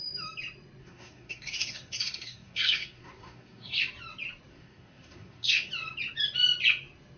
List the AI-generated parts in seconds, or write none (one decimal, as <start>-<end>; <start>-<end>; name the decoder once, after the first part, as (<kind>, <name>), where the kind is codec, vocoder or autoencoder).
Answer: 0.8-3.8 (codec, SNAC); 4.5-5.7